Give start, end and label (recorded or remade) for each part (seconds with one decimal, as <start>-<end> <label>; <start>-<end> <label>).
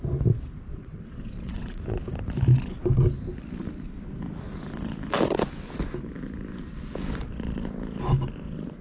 0.0-0.7 recorded; 0.7-2.0 remade; 2.0-8.8 recorded